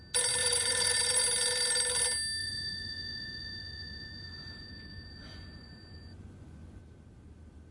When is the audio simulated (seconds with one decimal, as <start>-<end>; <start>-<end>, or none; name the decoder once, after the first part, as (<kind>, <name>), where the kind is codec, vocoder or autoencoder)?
0.4-1.2 (vocoder, Vocos); 2.4-6.8